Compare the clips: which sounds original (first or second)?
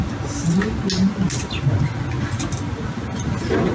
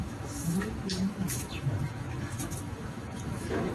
first